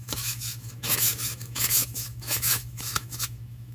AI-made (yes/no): yes